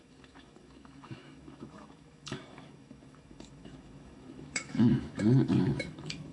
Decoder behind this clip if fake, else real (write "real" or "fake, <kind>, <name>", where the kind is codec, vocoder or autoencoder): fake, autoencoder, DAC-VAE